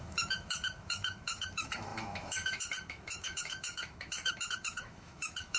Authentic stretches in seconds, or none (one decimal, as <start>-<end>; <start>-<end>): none